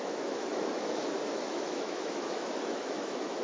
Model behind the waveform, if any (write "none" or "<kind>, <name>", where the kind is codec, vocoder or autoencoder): autoencoder, DAC-VAE